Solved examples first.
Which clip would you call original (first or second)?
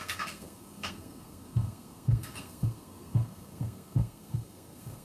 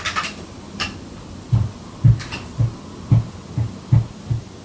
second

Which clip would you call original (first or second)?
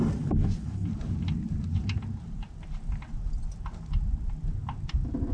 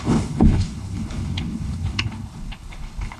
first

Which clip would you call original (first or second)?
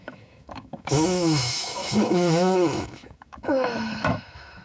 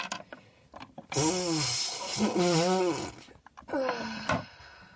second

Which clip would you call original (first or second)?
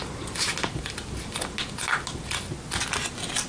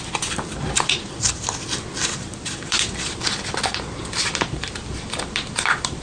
first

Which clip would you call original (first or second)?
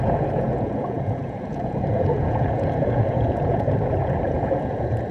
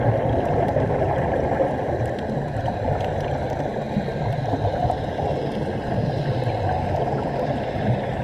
second